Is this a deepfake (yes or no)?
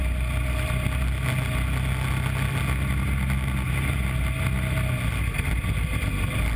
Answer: no